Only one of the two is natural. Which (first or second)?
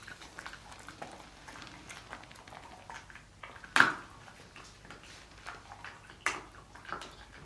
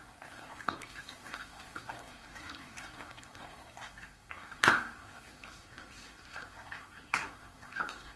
first